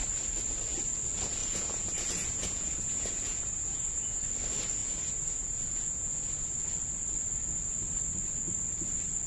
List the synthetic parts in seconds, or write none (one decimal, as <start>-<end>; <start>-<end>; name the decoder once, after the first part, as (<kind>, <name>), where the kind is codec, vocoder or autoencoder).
1.4-4.2 (vocoder, Vocos); 4.8-6.6